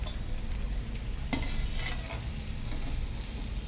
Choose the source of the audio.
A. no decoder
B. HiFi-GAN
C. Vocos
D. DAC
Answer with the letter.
A